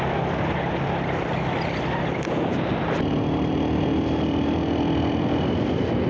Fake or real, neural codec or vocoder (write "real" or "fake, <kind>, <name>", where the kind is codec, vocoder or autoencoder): real